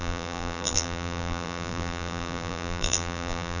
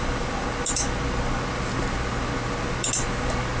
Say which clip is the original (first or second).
second